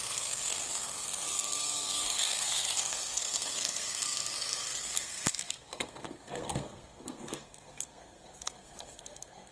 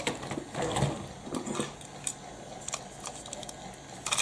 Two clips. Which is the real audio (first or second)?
second